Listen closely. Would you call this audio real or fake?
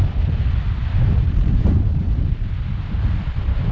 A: fake